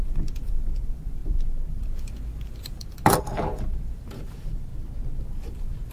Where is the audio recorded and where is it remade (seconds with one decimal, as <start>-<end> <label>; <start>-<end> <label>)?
0.0-4.7 remade; 4.7-5.2 recorded; 5.2-5.9 remade